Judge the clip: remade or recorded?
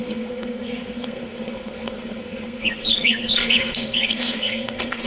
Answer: remade